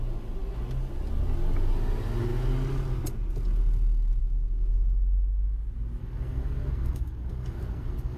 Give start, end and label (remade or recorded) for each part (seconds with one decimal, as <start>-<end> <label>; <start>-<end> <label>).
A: 0.0-6.0 recorded; 6.0-8.2 remade